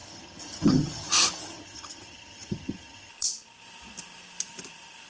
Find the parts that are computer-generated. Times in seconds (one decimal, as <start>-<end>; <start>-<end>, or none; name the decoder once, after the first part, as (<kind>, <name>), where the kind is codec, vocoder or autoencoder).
0.0-3.1 (vocoder, HiFi-GAN)